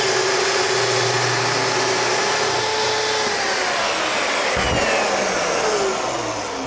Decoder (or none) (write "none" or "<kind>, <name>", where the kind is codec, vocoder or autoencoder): none